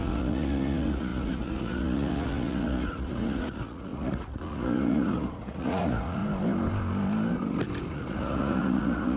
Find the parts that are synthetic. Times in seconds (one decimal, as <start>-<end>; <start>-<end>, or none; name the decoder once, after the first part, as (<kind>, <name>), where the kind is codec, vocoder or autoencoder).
0.0-6.2 (vocoder, Vocos); 7.9-9.2